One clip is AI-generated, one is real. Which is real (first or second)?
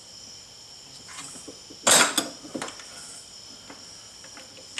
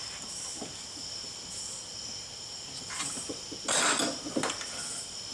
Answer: first